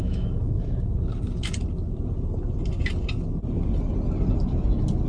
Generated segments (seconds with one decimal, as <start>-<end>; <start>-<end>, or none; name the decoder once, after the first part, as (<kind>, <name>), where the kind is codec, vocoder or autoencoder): 0.0-0.6 (autoencoder, DAC-VAE)